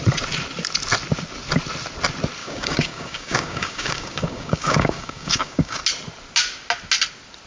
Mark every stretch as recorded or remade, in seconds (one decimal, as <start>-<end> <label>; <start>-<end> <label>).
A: 0.0-2.4 recorded; 2.4-5.8 remade; 5.8-7.5 recorded